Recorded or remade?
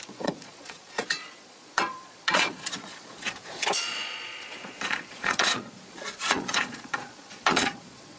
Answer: remade